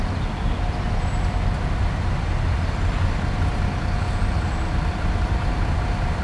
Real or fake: real